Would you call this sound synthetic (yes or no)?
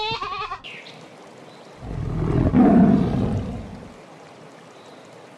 no